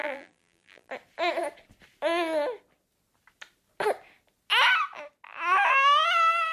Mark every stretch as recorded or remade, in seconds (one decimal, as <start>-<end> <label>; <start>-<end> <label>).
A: 0.0-0.9 remade; 0.9-6.5 recorded